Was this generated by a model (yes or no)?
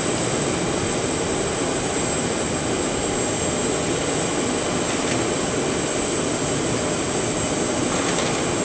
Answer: no